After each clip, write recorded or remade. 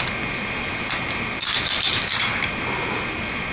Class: recorded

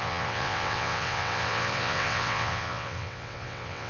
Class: remade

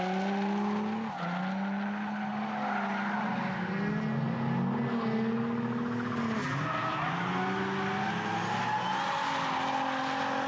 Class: recorded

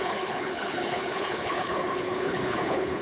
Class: remade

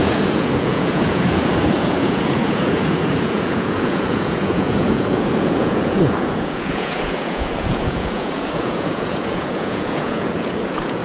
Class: remade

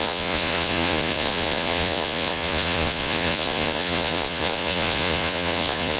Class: remade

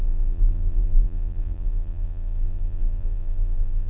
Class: remade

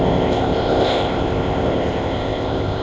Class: remade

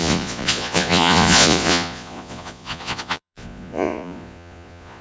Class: remade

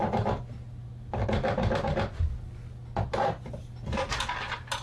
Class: recorded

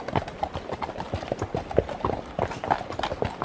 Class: recorded